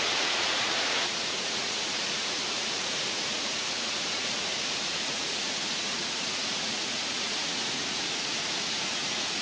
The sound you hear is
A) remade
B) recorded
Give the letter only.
A